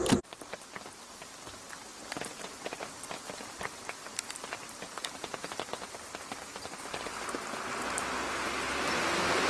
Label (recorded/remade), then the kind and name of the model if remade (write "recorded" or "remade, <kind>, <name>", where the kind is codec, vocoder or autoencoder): recorded